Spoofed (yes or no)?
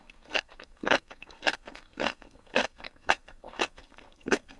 yes